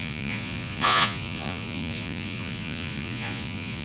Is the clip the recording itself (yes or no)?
no